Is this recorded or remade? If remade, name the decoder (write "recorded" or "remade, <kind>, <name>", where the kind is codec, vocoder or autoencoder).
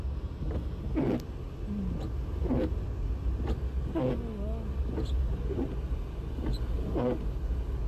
recorded